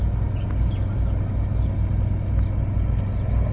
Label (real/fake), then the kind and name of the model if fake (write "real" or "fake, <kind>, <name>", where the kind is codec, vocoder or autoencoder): real